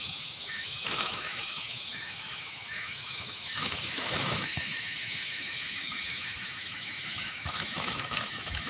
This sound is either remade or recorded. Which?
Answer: remade